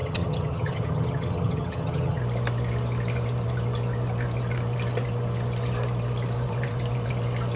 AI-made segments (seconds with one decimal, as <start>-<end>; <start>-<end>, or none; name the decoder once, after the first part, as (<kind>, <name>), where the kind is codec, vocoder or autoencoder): 0.0-2.2 (vocoder, HiFi-GAN)